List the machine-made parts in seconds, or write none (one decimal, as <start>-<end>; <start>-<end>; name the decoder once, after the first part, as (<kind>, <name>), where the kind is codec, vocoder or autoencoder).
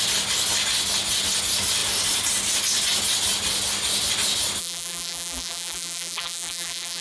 4.6-7.0 (vocoder, BigVGAN v2)